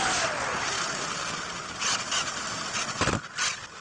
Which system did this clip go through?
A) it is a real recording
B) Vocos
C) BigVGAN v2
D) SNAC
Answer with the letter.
A